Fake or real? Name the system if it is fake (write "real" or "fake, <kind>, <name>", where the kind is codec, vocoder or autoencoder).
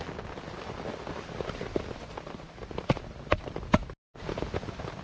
real